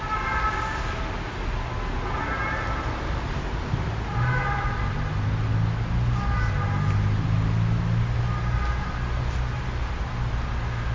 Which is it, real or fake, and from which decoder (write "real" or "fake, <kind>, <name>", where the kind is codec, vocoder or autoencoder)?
real